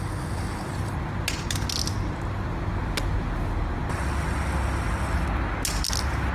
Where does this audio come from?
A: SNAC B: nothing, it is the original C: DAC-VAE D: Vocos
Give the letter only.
B